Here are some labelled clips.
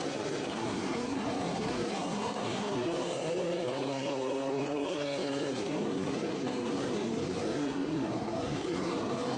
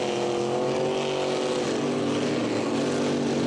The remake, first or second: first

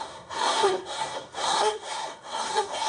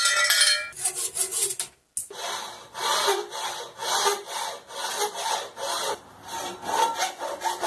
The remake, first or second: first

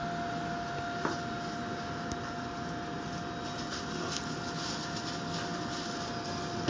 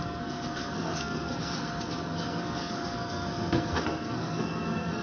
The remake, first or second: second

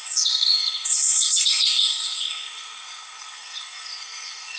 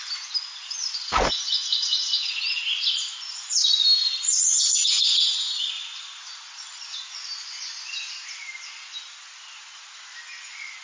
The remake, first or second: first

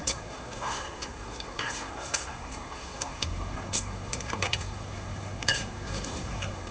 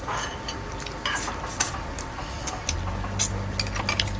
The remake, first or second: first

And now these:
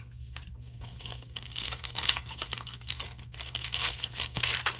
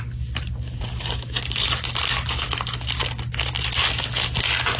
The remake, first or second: first